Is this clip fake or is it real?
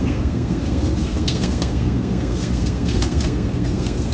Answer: fake